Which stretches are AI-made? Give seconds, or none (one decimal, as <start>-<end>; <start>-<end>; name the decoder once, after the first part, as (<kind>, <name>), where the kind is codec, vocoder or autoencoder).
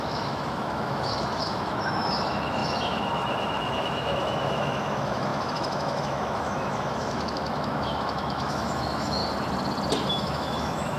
0.0-9.2 (autoencoder, DAC-VAE); 10.1-11.0